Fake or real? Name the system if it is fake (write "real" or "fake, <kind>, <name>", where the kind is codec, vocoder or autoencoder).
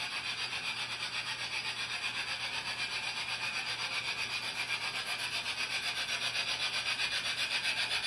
real